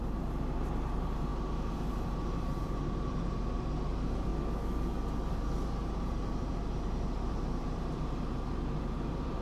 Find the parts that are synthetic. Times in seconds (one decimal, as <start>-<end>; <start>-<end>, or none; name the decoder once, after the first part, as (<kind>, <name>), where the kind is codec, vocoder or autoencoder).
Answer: 0.0-4.3 (vocoder, BigVGAN v2); 5.3-9.4

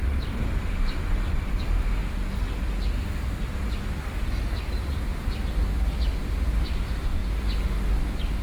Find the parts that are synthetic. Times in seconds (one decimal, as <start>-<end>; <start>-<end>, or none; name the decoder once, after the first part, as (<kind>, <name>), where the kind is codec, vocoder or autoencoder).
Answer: 0.0-2.0 (vocoder, BigVGAN v2); 6.6-7.2

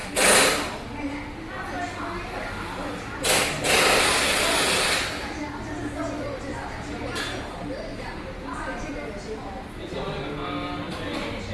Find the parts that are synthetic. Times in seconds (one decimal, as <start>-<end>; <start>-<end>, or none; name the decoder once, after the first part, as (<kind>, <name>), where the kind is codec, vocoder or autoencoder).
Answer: 6.5-7.2 (vocoder, BigVGAN v2); 7.9-8.9

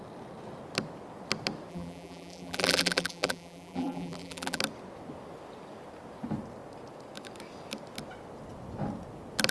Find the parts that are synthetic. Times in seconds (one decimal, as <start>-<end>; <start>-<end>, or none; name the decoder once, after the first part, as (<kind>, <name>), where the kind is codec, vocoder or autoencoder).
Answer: 1.7-4.6 (vocoder, BigVGAN v2)

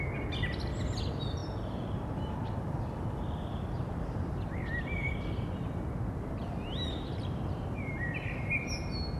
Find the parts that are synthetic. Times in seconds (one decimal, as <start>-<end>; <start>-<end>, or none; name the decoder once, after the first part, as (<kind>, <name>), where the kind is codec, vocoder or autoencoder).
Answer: 1.4-4.3 (vocoder, BigVGAN v2); 6.4-8.6

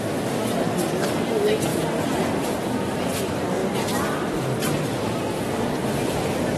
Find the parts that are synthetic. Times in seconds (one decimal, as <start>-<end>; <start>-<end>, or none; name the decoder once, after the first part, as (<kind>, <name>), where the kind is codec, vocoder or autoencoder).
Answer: none

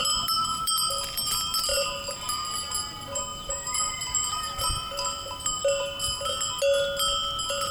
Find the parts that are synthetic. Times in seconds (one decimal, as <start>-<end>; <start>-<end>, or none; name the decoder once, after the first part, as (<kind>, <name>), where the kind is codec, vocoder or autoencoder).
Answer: 0.0-5.6 (vocoder, BigVGAN v2)

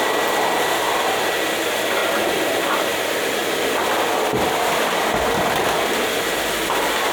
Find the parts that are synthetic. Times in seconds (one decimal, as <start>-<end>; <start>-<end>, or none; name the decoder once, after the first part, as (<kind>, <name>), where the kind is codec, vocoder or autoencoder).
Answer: 2.0-2.9 (vocoder, BigVGAN v2)